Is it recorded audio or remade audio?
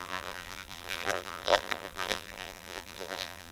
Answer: remade